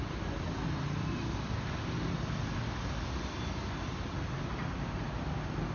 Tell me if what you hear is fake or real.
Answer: real